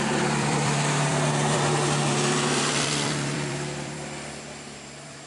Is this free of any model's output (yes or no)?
no